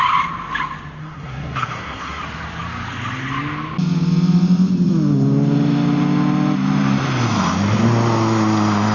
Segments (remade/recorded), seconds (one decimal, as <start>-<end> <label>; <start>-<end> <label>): 0.0-1.0 recorded; 1.0-2.2 remade; 2.2-8.9 recorded